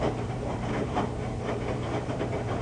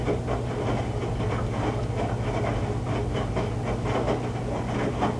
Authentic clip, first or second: second